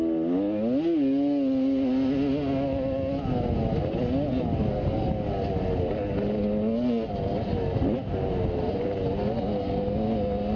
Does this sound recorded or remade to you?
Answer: recorded